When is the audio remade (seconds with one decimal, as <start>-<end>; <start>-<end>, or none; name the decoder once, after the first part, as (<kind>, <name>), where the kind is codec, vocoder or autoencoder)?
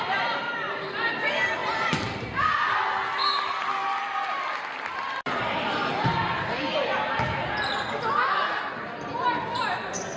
0.0-1.6 (vocoder, BigVGAN v2); 3.4-5.8